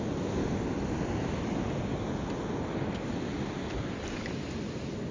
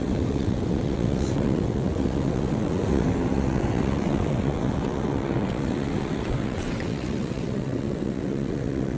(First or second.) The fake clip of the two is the second